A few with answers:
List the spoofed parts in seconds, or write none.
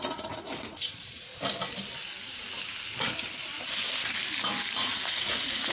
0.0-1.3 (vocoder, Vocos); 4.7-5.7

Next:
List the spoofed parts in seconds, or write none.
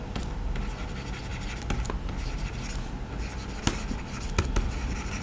none